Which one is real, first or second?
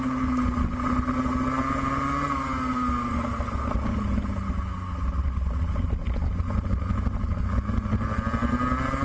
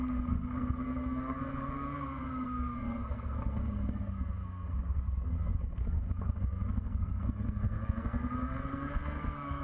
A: first